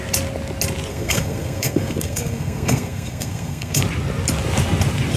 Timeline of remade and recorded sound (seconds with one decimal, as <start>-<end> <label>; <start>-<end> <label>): 0.0-0.9 recorded; 0.9-3.8 remade; 3.8-5.2 recorded